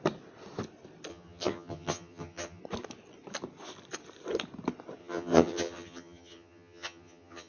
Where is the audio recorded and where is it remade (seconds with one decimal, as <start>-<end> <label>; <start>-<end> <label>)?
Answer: 0.0-1.1 recorded; 1.1-2.6 remade; 2.6-5.0 recorded; 5.0-7.5 remade